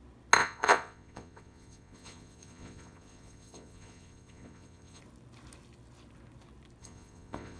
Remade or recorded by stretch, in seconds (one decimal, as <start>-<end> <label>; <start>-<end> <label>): 0.0-0.4 recorded; 0.4-5.0 remade; 5.0-6.8 recorded; 6.8-7.6 remade